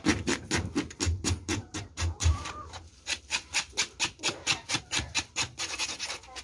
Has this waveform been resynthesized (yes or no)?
yes